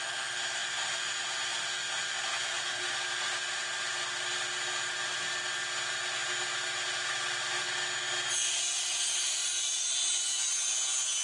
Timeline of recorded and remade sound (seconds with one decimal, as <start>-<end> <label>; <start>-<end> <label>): 0.0-11.2 recorded